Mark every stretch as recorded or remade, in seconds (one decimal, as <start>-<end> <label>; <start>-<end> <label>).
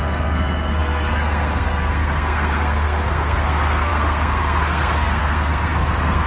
0.0-6.3 remade